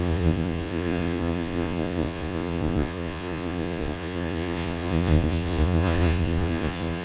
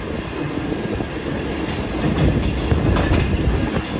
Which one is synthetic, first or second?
first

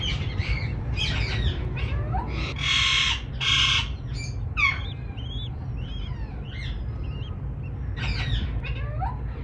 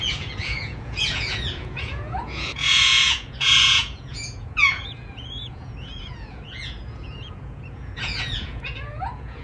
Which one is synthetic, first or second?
second